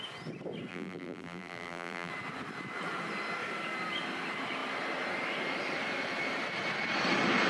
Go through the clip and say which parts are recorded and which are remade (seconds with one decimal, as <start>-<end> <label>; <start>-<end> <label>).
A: 0.0-0.7 recorded; 0.7-2.1 remade; 2.1-7.5 recorded